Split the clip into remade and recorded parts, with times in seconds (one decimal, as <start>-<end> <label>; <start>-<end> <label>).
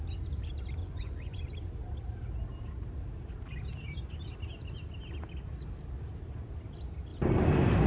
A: 0.0-0.8 recorded; 0.8-1.4 remade; 1.4-7.9 recorded